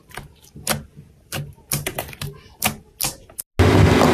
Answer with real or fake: real